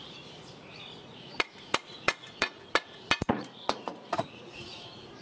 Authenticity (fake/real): fake